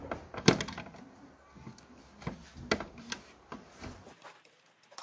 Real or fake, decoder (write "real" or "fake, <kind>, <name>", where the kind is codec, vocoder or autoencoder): real